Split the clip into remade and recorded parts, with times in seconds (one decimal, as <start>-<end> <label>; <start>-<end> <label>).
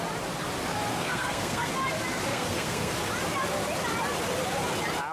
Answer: 0.0-0.9 recorded; 0.9-1.7 remade; 1.7-2.3 recorded; 2.3-2.9 remade; 2.9-5.1 recorded